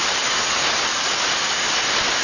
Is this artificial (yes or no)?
no